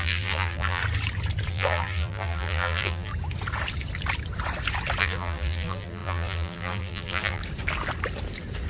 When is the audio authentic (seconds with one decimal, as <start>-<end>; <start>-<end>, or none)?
0.8-1.5; 3.1-5.0; 7.4-8.7